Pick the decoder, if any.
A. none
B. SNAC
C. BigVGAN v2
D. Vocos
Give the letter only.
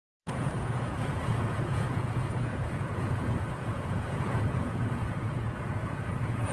D